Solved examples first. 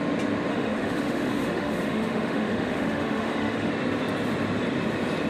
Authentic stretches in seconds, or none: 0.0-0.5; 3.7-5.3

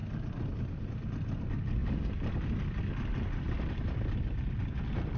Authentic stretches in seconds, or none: 0.0-5.2

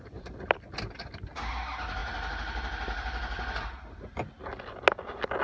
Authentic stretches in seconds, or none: 0.0-5.4

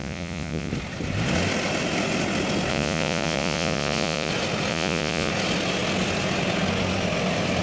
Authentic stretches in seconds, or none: 0.7-2.7; 4.3-4.7; 5.3-7.6

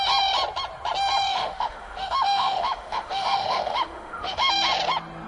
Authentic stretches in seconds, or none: 0.0-1.3; 4.5-5.3

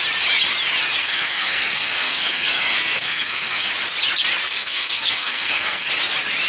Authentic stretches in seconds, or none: 0.0-1.0; 3.7-4.5; 5.9-6.5

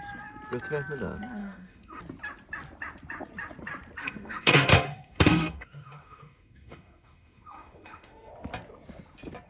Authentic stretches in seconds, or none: 0.0-1.4; 2.0-4.0; 8.3-9.5

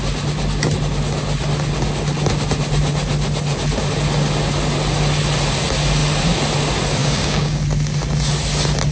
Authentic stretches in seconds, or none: 0.0-7.0; 7.6-8.9